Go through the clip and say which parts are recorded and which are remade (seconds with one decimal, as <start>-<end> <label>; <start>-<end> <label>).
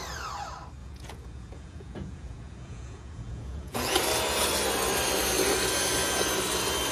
0.0-0.8 recorded; 0.8-4.0 remade; 4.0-6.9 recorded